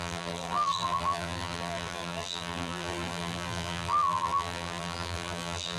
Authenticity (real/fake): fake